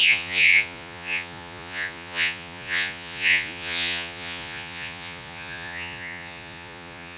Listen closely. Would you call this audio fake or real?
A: fake